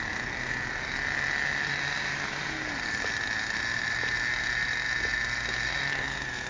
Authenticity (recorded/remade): recorded